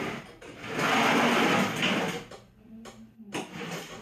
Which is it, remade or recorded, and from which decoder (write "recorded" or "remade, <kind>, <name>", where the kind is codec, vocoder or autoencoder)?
recorded